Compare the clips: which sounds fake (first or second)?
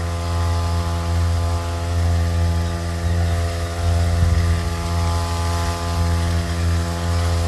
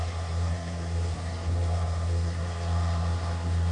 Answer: second